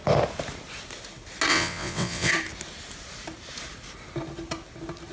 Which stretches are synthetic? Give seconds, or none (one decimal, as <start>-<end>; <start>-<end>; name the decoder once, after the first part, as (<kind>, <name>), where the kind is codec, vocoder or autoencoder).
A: 1.5-2.3 (vocoder, WaveNeXt)